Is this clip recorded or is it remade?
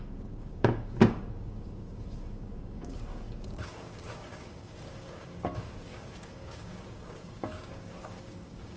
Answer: remade